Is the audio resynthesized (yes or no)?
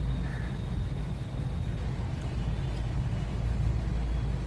no